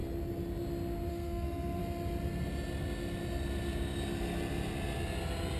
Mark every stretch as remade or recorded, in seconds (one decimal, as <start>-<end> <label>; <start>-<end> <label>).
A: 0.0-1.1 recorded; 1.1-1.8 remade; 1.8-5.6 recorded